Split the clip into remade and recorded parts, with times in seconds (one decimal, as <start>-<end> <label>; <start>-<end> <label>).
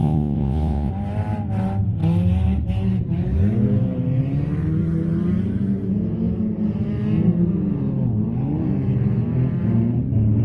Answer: 0.0-0.9 remade; 0.9-10.4 recorded